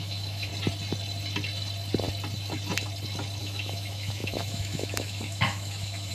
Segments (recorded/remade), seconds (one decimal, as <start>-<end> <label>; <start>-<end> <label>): 0.0-0.5 remade; 0.5-3.4 recorded; 3.4-6.1 remade